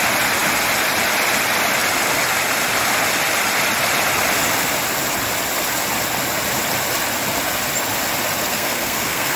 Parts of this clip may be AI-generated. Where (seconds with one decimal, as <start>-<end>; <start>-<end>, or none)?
8.5-9.4